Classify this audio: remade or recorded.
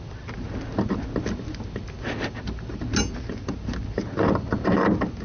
recorded